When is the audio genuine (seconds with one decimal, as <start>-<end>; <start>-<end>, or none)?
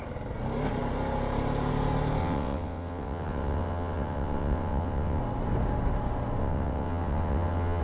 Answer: 0.0-2.2; 5.2-6.4